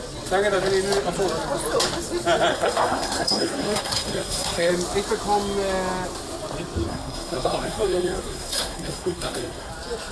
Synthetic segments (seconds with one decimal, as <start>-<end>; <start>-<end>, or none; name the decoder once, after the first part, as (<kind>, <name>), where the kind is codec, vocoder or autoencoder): 2.5-4.7 (codec, SNAC); 6.9-9.7